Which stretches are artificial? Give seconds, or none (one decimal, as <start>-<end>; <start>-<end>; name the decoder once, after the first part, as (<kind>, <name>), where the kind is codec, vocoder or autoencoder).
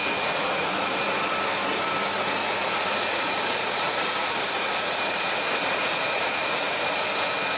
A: 0.0-1.0 (vocoder, Vocos); 2.4-7.0